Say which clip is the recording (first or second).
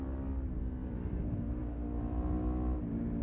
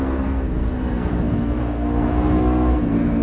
first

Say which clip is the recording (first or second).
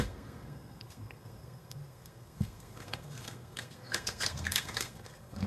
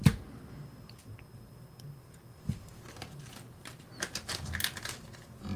second